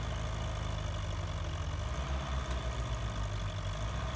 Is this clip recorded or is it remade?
recorded